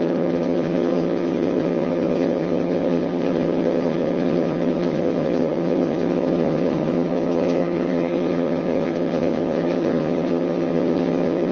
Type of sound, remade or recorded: remade